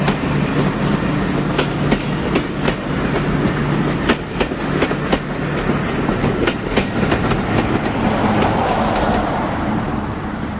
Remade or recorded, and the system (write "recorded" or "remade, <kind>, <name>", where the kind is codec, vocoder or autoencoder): recorded